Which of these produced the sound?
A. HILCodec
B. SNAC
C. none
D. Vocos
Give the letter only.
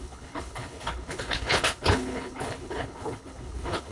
A